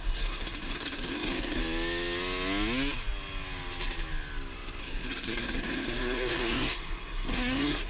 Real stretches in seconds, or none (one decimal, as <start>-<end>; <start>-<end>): 1.6-4.8